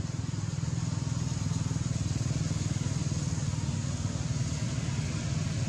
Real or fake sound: real